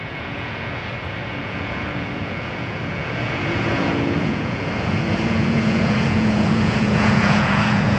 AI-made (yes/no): yes